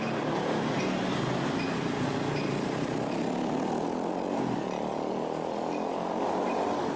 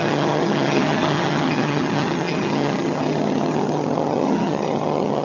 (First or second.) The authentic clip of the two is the first